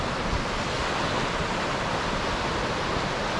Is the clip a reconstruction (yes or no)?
no